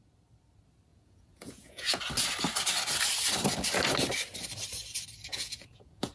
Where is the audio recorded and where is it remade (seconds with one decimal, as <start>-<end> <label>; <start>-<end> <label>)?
0.0-0.9 recorded; 0.9-2.0 remade; 2.0-5.3 recorded; 5.3-6.1 remade